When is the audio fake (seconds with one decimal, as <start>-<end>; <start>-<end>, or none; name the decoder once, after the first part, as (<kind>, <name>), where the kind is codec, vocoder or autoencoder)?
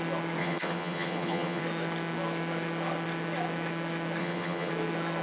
0.4-1.6 (vocoder, HiFi-GAN); 4.2-4.7